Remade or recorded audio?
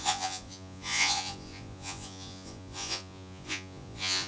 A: remade